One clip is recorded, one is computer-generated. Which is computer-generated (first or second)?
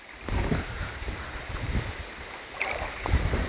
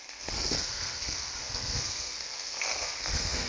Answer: second